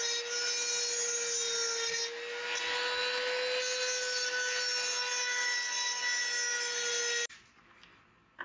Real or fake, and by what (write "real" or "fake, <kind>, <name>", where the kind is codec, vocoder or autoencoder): real